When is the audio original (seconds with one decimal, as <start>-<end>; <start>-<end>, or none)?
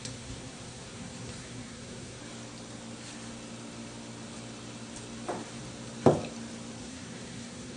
2.2-6.8